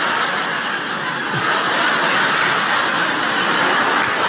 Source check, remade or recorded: recorded